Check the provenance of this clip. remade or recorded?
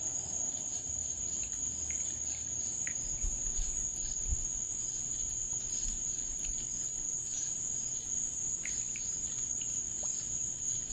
recorded